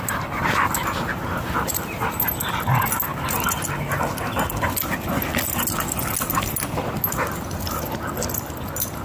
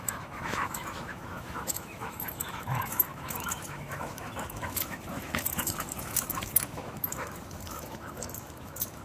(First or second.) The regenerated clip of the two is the second